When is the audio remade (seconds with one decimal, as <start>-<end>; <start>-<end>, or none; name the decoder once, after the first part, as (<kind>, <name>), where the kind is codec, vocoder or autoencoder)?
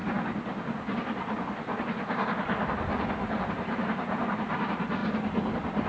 3.5-5.9 (vocoder, BigVGAN v2)